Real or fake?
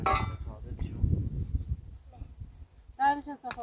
real